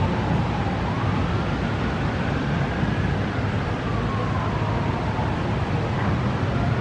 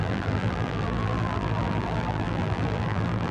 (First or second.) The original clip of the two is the first